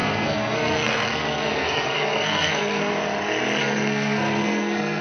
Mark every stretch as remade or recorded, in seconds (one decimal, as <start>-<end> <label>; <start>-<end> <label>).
0.0-2.9 remade; 2.9-3.6 recorded; 3.6-5.0 remade